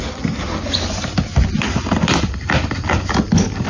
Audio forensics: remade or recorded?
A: recorded